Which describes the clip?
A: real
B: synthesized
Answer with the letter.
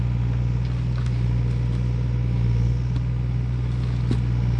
A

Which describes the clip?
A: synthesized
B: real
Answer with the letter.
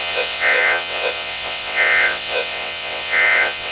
A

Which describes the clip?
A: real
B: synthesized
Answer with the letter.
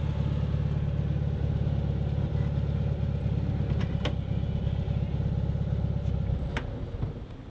A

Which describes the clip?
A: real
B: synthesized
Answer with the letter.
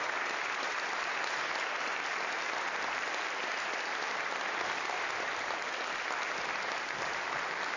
A